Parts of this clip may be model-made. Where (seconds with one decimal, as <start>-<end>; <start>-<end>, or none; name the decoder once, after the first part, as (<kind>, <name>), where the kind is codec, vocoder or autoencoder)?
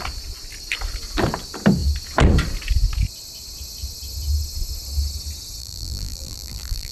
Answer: 5.6-6.9 (vocoder, BigVGAN v2)